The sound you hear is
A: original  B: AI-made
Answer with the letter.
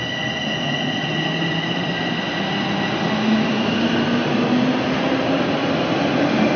A